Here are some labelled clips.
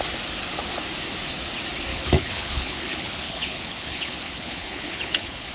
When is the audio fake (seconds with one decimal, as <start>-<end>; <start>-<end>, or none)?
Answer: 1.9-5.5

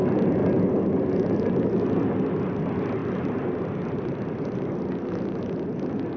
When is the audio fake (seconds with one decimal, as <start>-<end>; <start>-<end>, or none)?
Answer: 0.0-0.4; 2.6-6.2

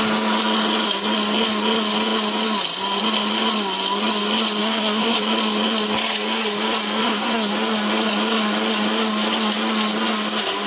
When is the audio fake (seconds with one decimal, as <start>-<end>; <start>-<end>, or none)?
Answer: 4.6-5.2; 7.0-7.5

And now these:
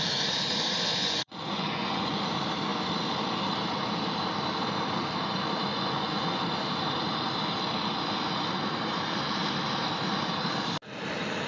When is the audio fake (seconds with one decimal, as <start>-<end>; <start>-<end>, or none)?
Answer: 1.0-2.2; 5.7-6.4